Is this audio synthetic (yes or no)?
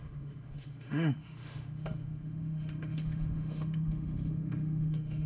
yes